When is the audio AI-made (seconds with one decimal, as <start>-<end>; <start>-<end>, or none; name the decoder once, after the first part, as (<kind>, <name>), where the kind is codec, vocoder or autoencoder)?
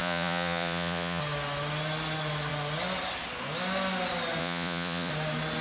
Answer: 0.0-1.2 (vocoder, Vocos); 4.4-5.1